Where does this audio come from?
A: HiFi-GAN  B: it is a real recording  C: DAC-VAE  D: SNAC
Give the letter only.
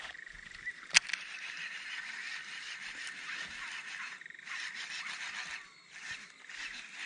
B